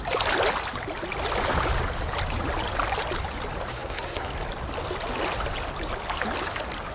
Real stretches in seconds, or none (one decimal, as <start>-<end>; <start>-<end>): 0.0-3.7; 4.3-6.9